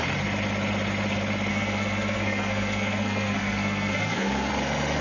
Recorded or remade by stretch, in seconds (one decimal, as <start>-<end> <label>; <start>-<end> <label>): 0.0-1.5 recorded; 1.5-4.5 remade; 4.5-5.0 recorded